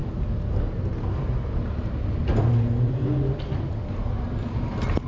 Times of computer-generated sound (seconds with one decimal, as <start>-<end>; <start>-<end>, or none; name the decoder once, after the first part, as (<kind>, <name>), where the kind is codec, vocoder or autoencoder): none